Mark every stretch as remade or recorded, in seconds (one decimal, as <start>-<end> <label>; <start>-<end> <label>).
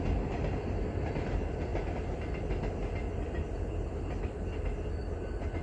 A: 0.0-5.6 recorded